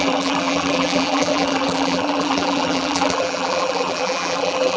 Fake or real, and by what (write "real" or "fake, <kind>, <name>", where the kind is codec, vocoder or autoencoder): fake, vocoder, BigVGAN v2